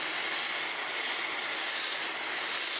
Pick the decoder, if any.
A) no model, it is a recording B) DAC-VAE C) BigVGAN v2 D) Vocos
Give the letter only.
A